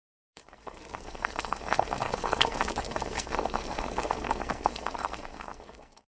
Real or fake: fake